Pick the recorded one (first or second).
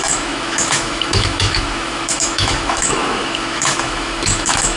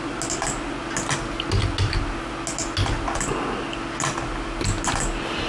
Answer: second